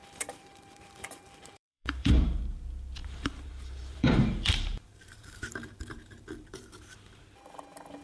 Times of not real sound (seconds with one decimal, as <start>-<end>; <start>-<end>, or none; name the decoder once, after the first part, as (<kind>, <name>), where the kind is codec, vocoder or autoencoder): 0.0-2.4 (vocoder, BigVGAN v2); 3.0-7.2